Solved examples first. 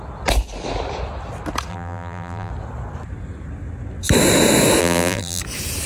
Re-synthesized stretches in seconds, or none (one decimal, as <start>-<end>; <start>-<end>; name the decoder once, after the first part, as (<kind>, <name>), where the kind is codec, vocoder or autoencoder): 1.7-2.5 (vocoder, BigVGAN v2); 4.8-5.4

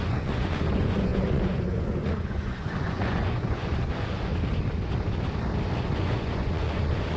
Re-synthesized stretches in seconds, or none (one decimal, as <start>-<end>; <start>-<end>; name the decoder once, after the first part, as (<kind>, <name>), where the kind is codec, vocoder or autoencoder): 0.0-4.3 (vocoder, Vocos); 5.9-7.2

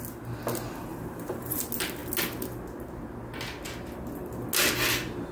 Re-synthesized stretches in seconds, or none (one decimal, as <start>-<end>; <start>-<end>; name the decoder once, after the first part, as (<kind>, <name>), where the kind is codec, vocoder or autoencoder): 0.9-1.6 (vocoder, BigVGAN v2)

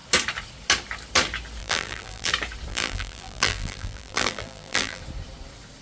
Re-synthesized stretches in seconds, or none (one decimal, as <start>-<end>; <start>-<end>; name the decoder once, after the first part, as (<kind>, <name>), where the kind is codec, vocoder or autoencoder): 1.6-2.3 (vocoder, BigVGAN v2); 2.7-5.0

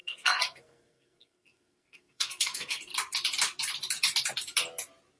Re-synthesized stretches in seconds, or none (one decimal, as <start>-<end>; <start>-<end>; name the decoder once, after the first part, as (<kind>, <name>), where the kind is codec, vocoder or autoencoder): 0.0-2.9 (codec, SNAC)